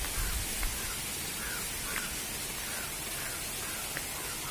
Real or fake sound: real